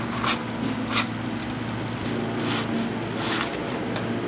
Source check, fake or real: real